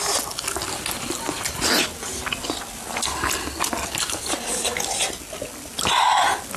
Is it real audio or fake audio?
real